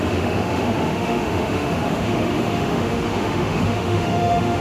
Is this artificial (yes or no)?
yes